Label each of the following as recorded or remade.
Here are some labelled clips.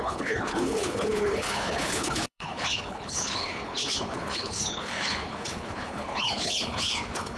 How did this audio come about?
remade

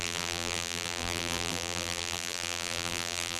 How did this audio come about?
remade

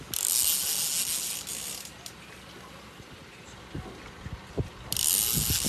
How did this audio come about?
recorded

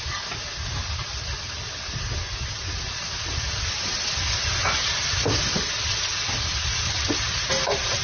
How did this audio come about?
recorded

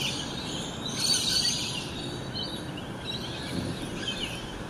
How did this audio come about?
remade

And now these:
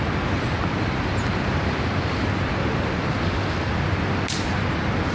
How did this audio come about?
recorded